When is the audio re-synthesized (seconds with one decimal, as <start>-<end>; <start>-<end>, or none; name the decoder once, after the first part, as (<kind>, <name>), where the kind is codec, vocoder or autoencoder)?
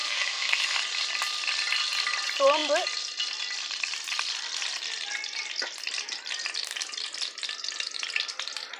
0.0-0.8 (codec, SNAC)